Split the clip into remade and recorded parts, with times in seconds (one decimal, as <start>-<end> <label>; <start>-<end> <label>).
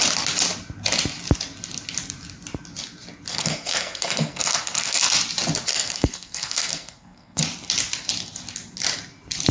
0.0-3.3 recorded; 3.3-5.1 remade; 5.1-5.7 recorded; 5.7-7.4 remade; 7.4-9.5 recorded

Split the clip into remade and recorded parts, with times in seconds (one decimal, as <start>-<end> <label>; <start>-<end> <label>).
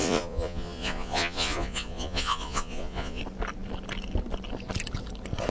0.0-3.2 remade; 3.2-5.5 recorded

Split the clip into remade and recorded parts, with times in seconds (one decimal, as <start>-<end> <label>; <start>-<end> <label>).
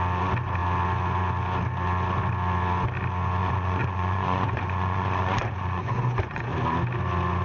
0.0-3.4 recorded; 3.4-6.5 remade; 6.5-7.4 recorded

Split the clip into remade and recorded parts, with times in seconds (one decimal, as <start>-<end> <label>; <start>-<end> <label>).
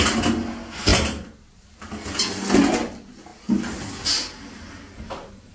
0.0-5.5 recorded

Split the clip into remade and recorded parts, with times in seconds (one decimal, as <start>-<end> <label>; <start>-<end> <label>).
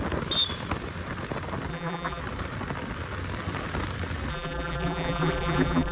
0.0-1.7 recorded; 1.7-2.2 remade; 2.2-4.3 recorded; 4.3-5.9 remade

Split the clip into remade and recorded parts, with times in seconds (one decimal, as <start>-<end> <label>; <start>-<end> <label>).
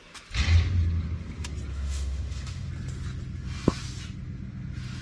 0.0-1.7 recorded; 1.7-2.7 remade; 2.7-5.0 recorded